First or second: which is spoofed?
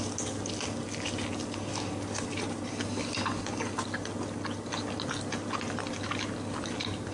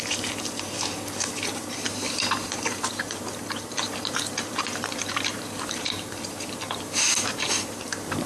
second